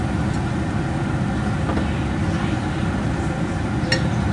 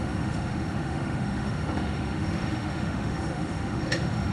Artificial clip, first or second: second